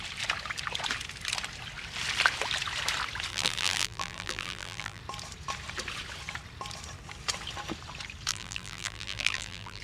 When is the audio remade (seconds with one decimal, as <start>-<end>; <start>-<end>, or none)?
3.3-5.0; 8.3-9.8